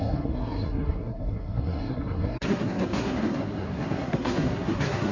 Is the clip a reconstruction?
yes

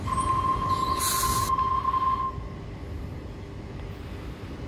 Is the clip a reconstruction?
no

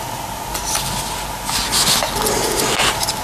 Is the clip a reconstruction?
no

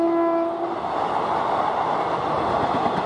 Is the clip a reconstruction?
no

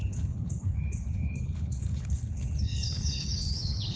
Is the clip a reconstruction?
yes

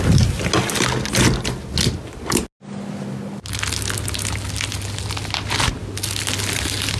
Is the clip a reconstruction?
no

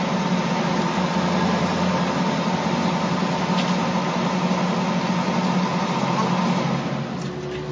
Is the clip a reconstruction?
no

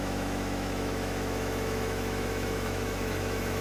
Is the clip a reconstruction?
yes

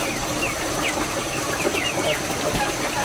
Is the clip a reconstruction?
no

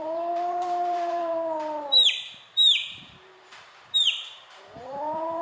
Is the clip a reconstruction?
yes